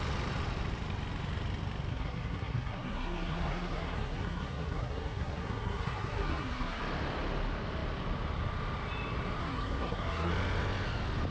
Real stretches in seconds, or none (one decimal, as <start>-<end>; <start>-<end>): 0.0-1.9; 6.8-9.4; 10.3-11.3